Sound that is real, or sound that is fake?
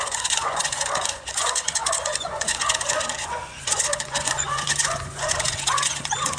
fake